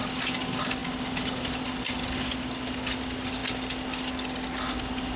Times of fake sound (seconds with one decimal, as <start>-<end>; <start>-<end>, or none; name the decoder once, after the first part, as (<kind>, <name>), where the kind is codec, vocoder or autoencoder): none